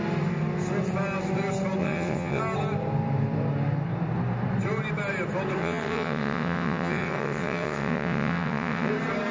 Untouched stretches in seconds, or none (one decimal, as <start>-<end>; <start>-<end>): 0.0-1.8; 2.4-5.6; 8.9-9.3

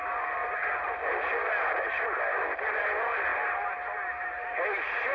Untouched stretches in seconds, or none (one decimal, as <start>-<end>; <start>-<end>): 0.0-5.1

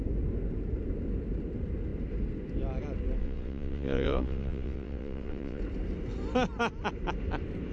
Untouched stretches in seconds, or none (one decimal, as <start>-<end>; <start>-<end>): 0.0-3.2; 5.6-7.7

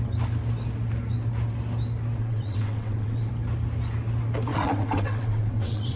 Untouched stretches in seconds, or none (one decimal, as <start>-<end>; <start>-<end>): 0.0-2.2; 3.3-4.5